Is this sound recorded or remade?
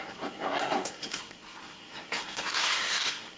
remade